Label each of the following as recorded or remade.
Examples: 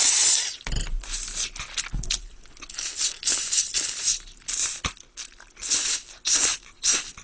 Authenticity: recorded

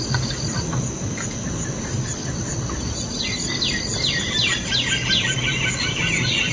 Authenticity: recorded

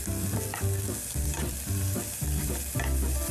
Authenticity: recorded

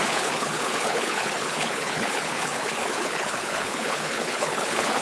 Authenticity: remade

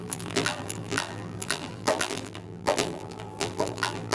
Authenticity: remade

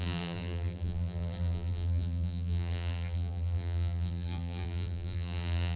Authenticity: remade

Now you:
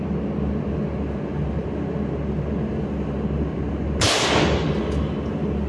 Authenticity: recorded